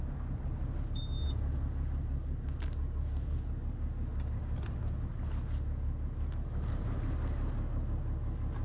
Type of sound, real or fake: real